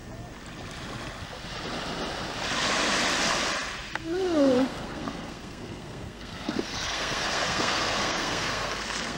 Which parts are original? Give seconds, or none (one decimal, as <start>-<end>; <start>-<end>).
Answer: 0.0-4.0